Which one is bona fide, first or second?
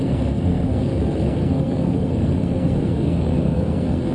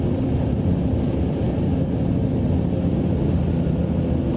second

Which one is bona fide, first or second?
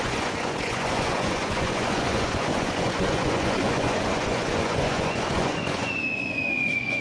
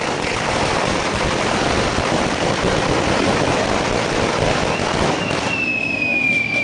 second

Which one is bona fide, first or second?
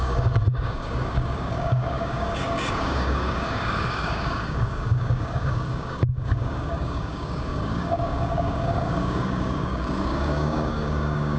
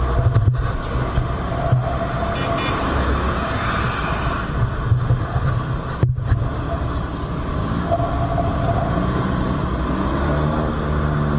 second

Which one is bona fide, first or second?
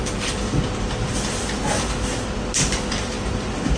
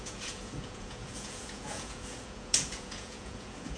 first